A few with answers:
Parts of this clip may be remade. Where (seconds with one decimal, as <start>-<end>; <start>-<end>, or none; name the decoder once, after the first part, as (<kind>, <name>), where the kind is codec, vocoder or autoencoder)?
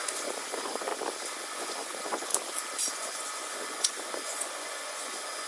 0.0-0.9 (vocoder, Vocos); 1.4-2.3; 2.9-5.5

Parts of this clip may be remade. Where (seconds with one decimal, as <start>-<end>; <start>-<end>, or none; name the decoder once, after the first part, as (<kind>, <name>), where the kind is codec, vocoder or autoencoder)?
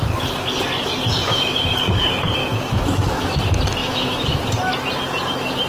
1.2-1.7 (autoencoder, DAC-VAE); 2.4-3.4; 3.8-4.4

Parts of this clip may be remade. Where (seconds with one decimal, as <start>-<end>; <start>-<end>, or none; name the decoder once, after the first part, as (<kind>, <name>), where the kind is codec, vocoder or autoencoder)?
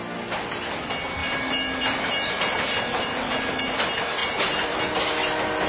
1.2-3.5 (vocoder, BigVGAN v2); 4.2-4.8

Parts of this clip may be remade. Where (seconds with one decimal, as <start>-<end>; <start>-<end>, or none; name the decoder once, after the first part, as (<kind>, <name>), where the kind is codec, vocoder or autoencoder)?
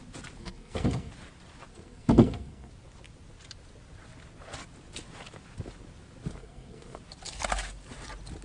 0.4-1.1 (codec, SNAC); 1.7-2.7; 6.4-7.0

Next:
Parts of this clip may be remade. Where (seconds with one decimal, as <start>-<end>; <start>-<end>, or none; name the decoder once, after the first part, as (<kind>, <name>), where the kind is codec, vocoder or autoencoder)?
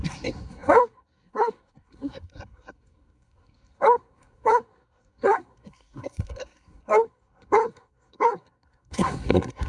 0.0-9.7 (codec, SNAC)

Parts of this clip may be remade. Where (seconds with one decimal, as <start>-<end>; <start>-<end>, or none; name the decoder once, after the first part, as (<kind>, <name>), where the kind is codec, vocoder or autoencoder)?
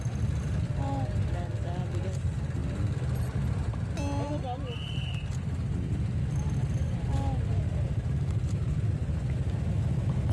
none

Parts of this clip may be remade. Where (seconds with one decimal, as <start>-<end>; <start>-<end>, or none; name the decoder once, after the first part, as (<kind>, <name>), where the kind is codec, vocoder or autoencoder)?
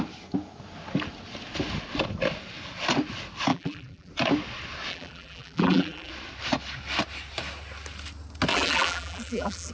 3.5-4.1 (vocoder, BigVGAN v2); 4.9-6.1; 8.5-9.7